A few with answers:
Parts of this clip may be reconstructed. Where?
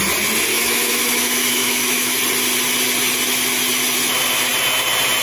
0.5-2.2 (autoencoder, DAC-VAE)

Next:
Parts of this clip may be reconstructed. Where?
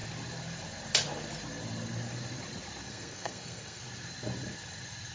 2.8-3.8 (codec, SNAC)